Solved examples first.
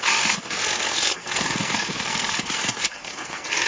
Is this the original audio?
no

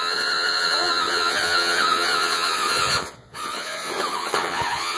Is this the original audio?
no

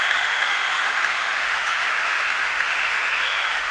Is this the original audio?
no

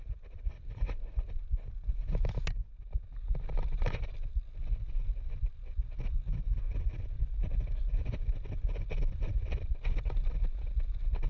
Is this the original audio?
yes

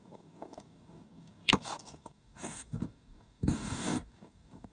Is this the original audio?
no